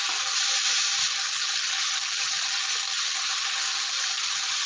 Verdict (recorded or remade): remade